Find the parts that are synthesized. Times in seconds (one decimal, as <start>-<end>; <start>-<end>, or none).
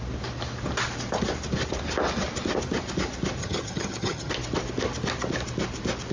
3.4-4.3